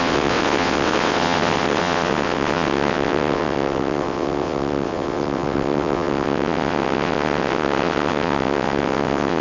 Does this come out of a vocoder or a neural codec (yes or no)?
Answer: yes